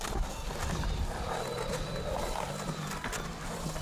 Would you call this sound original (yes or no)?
yes